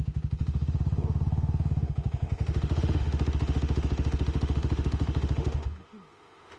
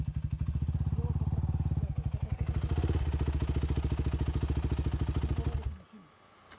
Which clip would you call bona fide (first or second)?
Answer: second